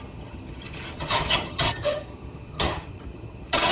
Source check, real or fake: fake